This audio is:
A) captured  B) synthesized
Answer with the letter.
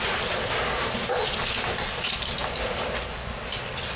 A